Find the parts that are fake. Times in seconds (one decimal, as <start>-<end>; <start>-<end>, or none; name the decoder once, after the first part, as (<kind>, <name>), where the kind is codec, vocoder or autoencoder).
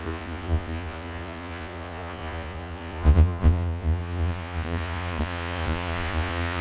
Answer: 0.0-6.6 (vocoder, Vocos)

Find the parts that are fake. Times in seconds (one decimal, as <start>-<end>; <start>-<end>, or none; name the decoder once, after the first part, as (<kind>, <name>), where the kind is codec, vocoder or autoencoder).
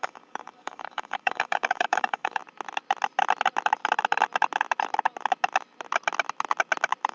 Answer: 0.0-2.4 (codec, DAC)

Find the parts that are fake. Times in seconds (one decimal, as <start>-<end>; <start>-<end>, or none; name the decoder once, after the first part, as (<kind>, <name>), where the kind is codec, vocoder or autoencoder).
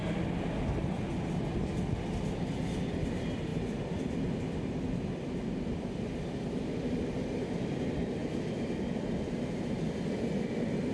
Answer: none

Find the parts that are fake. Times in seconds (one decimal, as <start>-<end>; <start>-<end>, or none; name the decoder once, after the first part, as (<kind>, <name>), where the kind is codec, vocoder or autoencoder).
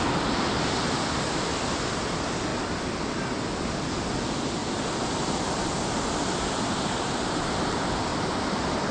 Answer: none